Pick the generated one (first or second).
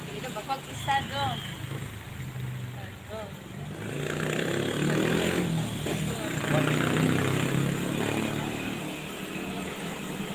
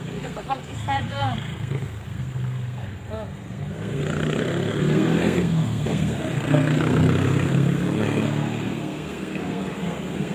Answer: second